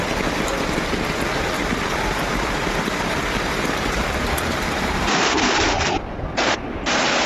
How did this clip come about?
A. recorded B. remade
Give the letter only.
B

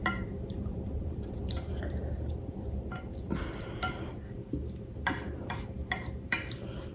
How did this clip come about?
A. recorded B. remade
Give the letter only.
B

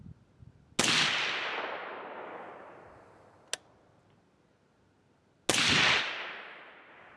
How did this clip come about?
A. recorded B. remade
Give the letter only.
A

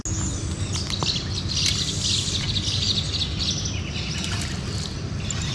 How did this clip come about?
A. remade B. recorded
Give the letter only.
B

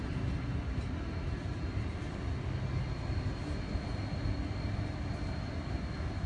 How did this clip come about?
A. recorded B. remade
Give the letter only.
A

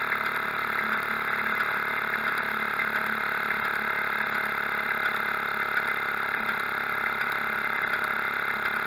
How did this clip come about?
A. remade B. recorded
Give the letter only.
B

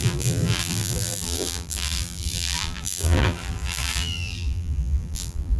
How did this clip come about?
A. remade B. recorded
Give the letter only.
A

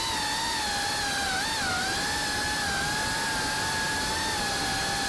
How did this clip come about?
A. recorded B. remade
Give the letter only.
A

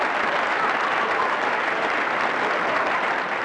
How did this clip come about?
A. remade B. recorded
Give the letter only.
B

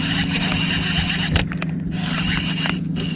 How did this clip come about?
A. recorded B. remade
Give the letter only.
A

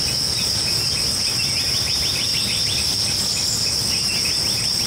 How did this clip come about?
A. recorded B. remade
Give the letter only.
A